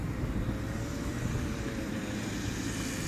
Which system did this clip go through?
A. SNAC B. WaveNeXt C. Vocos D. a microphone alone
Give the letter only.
D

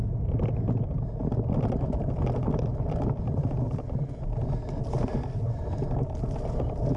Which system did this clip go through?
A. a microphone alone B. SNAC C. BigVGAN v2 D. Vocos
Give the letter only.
A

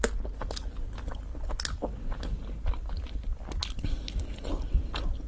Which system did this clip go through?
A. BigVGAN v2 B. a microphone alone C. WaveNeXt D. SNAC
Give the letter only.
B